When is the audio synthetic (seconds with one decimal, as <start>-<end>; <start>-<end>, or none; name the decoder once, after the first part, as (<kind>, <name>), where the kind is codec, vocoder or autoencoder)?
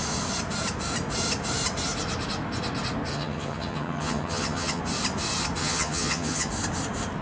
3.1-4.8 (vocoder, HiFi-GAN); 5.6-6.5